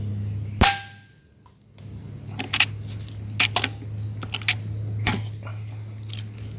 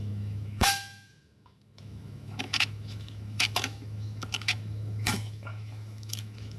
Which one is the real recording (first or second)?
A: first